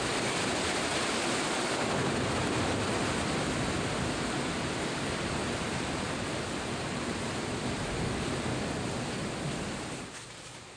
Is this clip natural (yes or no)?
yes